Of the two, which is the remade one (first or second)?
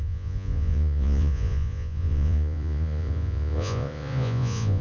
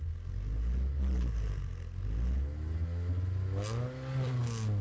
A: first